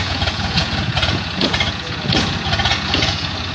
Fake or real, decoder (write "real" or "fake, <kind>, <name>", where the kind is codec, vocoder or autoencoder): fake, vocoder, Vocos